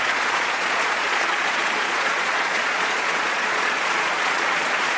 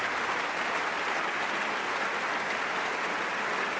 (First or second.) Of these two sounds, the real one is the second